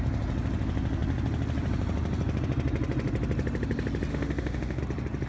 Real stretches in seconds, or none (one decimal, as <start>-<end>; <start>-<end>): 0.0-4.1; 4.8-5.3

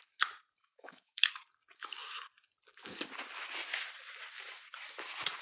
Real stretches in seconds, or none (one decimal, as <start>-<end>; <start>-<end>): 0.0-0.6; 1.3-5.4

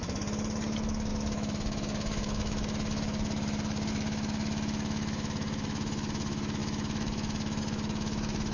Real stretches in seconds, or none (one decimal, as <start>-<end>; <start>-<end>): none

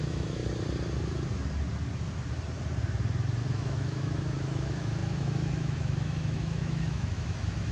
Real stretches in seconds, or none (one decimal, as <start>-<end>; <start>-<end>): 0.4-3.5

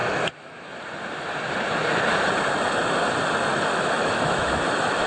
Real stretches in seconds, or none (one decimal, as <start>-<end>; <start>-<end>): 0.7-3.7

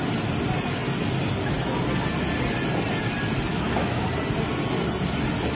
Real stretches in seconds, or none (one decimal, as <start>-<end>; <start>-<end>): 0.0-3.5; 4.1-5.6

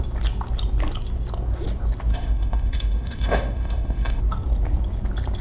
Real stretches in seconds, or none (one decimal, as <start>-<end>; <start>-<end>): 0.0-2.1; 4.2-5.4